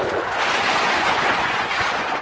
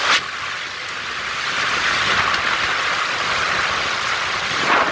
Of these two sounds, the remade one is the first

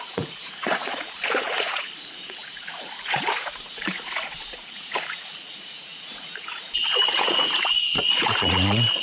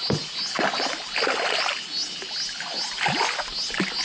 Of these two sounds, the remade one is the first